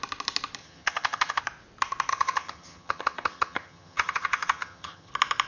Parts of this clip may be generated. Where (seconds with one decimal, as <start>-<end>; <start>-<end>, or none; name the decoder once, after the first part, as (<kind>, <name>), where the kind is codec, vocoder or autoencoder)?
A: 0.6-1.4 (vocoder, HiFi-GAN); 2.1-5.1